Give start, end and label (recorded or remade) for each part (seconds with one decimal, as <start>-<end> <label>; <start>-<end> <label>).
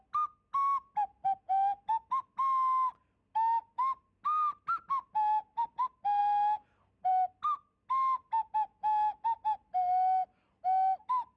0.0-11.4 recorded